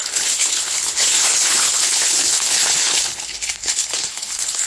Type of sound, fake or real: fake